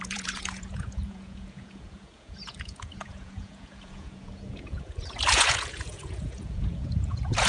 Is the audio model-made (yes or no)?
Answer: yes